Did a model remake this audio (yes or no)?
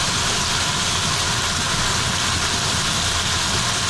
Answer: no